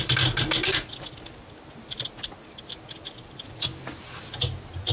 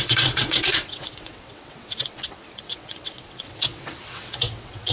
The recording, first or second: first